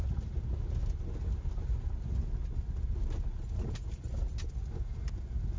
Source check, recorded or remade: recorded